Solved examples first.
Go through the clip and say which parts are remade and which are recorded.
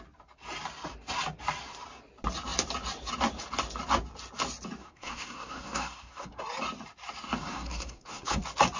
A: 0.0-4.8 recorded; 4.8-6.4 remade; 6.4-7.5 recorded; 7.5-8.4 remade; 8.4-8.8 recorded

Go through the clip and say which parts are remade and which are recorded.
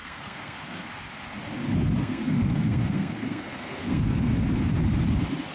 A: 0.0-0.9 remade; 0.9-2.0 recorded; 2.0-4.3 remade; 4.3-5.5 recorded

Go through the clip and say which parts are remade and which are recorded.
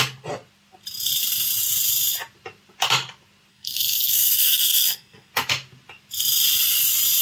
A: 0.0-3.5 recorded; 3.5-5.3 remade; 5.3-7.2 recorded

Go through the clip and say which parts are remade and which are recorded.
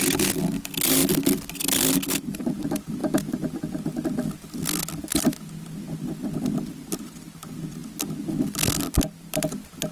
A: 0.0-9.9 recorded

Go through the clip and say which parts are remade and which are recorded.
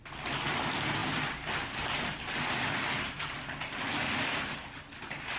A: 0.0-5.4 recorded